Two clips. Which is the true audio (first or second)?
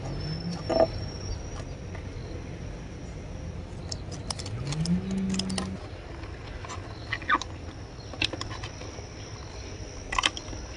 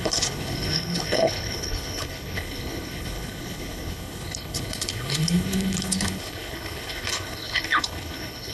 first